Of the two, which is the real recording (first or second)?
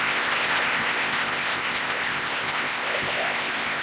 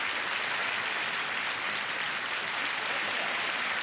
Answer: second